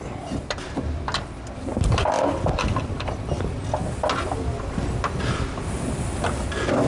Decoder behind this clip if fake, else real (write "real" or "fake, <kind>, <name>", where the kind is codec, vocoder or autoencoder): real